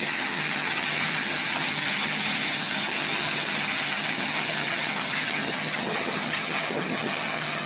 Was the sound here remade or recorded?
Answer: remade